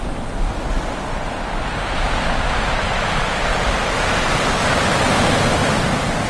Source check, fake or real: real